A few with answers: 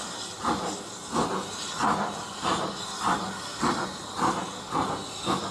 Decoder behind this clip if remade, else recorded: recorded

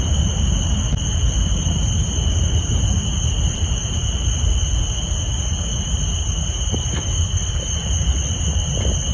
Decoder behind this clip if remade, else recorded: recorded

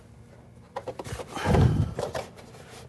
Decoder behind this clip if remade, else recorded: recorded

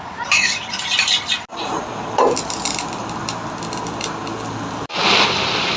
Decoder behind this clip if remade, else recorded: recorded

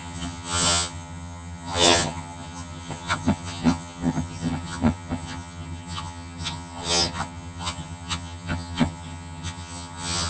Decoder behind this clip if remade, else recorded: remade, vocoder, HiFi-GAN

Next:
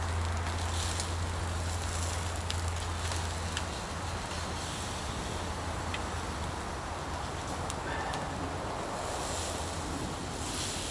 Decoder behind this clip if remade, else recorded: recorded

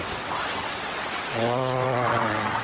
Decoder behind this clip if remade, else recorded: remade, vocoder, WaveNeXt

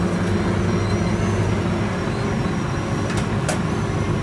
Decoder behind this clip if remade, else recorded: recorded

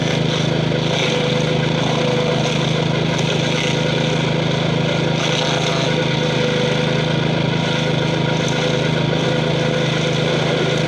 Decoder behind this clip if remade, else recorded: recorded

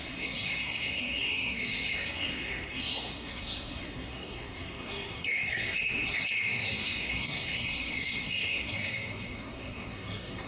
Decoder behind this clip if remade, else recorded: remade, codec, SNAC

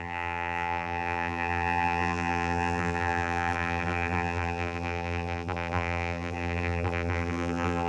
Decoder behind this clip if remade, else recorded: remade, vocoder, BigVGAN v2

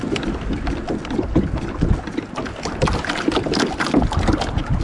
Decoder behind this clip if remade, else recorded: recorded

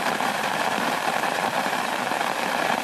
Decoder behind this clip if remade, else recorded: remade, vocoder, BigVGAN v2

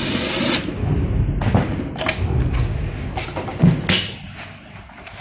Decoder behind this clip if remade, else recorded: recorded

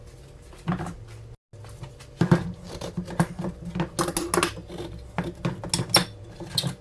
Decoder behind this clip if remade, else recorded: recorded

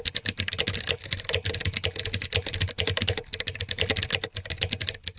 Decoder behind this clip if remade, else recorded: recorded